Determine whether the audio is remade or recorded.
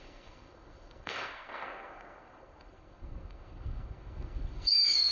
remade